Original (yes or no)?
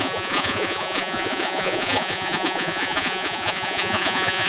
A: no